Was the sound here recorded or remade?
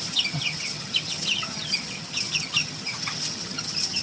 remade